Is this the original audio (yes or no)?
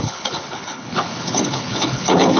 no